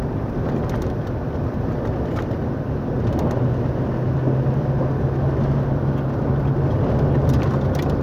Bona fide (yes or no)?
yes